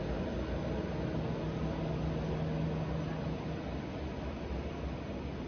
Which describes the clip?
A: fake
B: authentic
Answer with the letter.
B